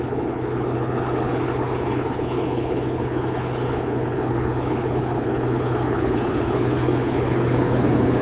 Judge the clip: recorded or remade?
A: remade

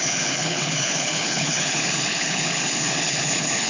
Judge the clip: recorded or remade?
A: remade